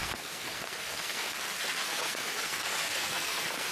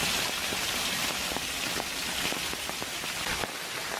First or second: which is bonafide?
second